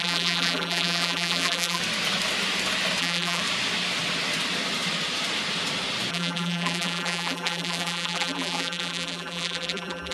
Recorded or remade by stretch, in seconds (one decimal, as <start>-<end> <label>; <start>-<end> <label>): 0.0-1.8 remade; 1.8-3.0 recorded; 3.0-3.4 remade; 3.4-6.1 recorded; 6.1-10.1 remade